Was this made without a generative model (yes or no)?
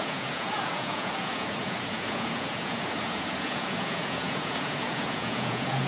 no